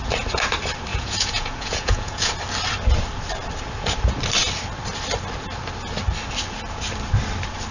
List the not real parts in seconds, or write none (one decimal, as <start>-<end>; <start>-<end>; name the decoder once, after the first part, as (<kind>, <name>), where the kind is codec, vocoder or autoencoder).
0.9-2.3 (vocoder, Vocos)